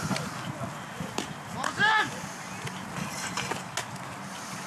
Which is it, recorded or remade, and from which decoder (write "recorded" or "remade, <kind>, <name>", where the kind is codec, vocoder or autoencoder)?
recorded